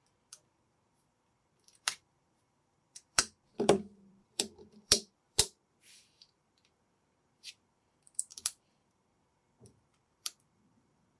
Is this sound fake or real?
fake